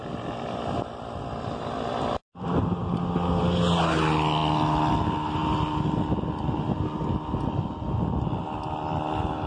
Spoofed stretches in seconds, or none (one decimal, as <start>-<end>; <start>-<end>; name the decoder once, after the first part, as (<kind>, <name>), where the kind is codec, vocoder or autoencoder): none